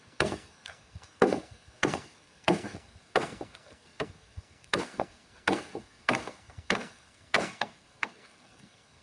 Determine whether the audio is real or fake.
fake